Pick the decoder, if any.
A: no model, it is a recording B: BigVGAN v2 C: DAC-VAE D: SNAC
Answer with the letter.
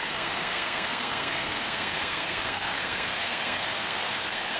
D